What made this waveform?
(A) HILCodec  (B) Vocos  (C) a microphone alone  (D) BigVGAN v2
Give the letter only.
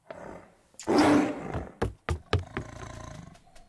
C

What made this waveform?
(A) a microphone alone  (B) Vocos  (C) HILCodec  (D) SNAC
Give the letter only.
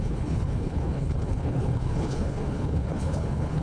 C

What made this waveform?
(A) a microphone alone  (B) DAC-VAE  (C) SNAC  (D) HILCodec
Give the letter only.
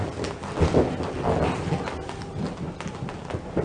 A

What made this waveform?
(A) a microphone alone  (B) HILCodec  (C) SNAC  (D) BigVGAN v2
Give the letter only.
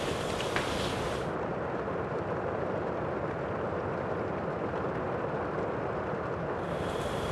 A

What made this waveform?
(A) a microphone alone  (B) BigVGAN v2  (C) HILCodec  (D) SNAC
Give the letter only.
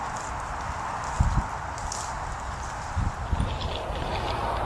A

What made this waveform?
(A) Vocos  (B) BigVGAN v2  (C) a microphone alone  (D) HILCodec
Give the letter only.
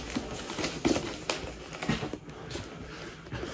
C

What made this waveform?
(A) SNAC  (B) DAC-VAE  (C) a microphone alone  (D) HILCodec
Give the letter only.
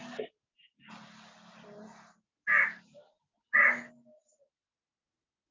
C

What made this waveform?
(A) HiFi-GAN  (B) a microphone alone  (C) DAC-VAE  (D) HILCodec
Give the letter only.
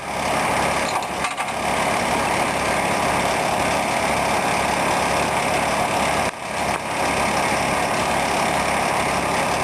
B